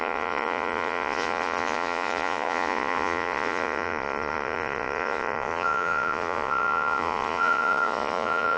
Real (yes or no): no